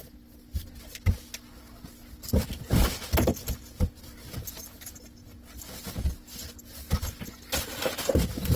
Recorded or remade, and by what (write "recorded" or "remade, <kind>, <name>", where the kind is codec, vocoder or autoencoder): recorded